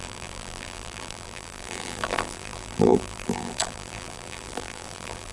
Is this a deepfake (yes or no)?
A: yes